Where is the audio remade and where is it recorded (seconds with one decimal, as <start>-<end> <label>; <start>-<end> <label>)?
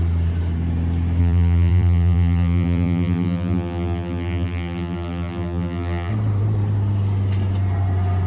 0.0-1.2 recorded; 1.2-6.1 remade; 6.1-8.3 recorded